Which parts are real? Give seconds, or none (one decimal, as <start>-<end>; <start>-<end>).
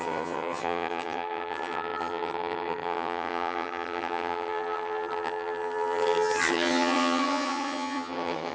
none